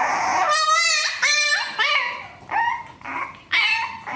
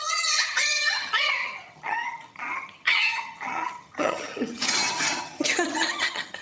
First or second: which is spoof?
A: second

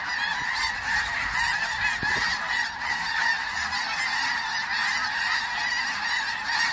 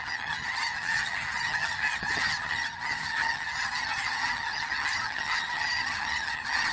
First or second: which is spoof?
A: second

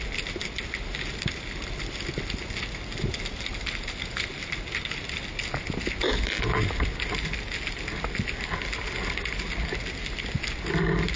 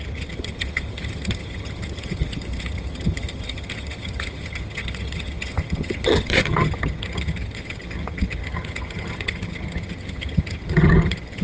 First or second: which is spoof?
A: second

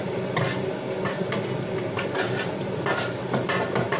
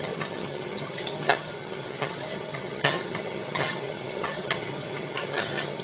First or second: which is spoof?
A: second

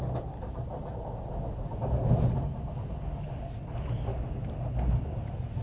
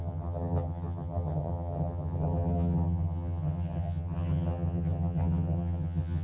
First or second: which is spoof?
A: second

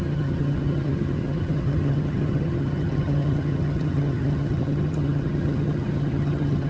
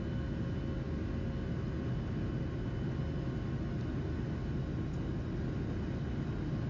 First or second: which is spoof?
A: first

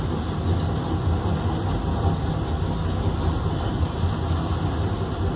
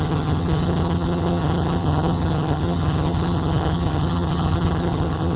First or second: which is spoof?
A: second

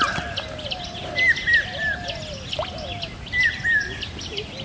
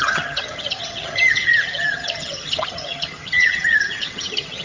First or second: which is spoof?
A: second